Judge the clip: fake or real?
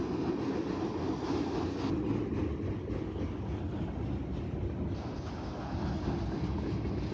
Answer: real